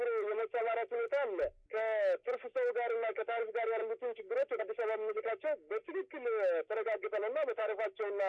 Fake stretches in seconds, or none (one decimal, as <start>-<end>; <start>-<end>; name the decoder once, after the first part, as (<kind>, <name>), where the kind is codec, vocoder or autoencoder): none